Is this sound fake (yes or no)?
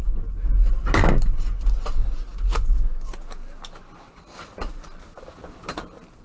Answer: no